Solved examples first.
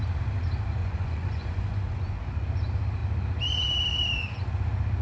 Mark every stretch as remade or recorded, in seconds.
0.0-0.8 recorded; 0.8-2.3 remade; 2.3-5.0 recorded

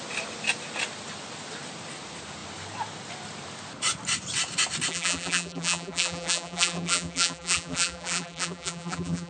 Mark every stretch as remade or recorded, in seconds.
0.0-4.9 recorded; 4.9-9.3 remade

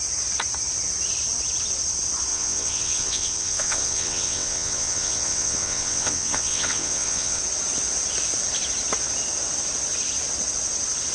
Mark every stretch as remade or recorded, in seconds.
0.0-2.3 recorded; 2.3-7.4 remade; 7.4-11.1 recorded

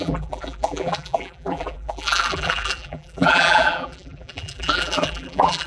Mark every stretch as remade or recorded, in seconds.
0.0-5.7 remade